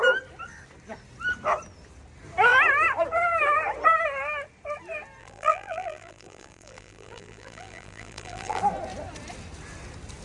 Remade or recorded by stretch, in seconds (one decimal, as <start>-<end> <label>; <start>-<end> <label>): 0.0-5.2 recorded; 5.2-8.6 remade; 8.6-10.2 recorded